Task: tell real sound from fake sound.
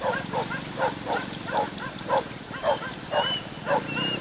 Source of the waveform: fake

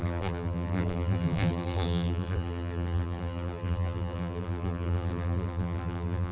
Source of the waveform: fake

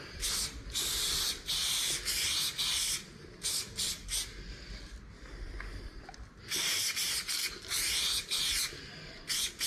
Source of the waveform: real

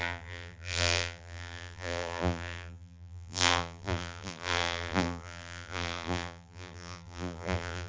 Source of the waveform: fake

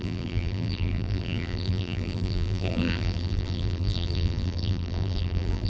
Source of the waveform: fake